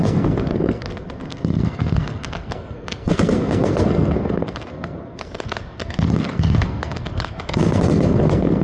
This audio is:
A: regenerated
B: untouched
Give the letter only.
A